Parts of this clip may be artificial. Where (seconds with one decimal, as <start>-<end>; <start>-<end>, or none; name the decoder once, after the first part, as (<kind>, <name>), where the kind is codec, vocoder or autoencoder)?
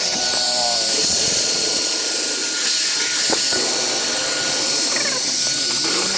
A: 1.0-1.9 (vocoder, Vocos)